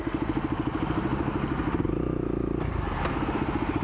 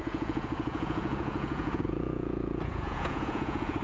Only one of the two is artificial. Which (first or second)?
second